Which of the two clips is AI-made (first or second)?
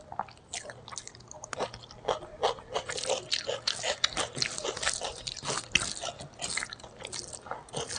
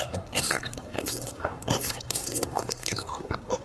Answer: second